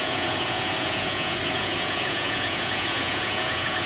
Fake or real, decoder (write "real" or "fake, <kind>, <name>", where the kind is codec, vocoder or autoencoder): fake, vocoder, Vocos